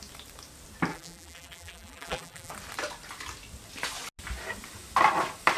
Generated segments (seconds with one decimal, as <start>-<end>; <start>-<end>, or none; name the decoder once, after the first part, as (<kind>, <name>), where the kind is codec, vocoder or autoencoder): 0.9-2.5 (vocoder, BigVGAN v2)